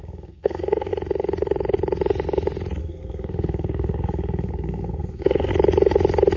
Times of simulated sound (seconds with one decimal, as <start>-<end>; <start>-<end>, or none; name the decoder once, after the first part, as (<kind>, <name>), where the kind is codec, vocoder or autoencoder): 0.0-0.9 (codec, SNAC); 2.8-5.5